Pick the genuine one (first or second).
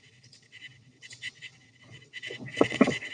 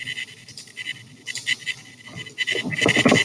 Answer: second